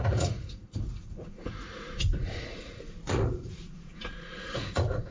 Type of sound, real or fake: fake